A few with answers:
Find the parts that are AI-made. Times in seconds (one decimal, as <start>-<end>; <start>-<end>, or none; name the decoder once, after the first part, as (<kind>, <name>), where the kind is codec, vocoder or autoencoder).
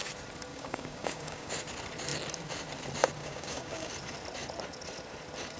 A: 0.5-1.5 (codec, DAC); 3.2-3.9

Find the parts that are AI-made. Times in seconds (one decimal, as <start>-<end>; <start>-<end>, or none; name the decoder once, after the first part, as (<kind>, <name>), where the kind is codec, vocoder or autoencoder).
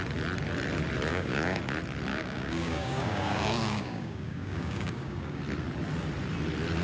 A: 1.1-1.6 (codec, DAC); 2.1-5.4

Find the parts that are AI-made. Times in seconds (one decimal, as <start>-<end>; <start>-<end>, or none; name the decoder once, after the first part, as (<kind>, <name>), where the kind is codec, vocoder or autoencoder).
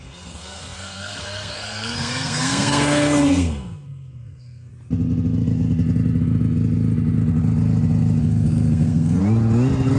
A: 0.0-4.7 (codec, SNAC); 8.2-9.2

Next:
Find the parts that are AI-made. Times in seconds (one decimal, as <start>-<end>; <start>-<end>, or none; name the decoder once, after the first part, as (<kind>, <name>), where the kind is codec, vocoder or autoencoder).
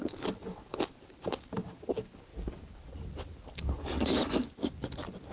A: 0.0-2.3 (vocoder, BigVGAN v2)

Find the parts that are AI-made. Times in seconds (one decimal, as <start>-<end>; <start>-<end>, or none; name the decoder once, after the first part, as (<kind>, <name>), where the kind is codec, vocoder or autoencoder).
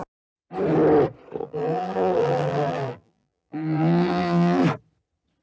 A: 1.4-4.6 (vocoder, BigVGAN v2)